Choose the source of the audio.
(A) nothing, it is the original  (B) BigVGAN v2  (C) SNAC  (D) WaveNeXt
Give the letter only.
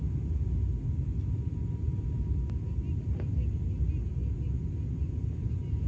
A